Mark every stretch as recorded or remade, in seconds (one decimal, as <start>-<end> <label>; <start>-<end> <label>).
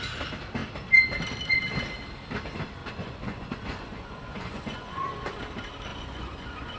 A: 0.0-2.8 recorded; 2.8-5.4 remade; 5.4-5.9 recorded; 5.9-6.8 remade